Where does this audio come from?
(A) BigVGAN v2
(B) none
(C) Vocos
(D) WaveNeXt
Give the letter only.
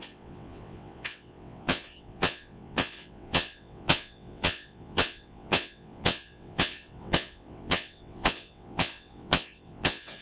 D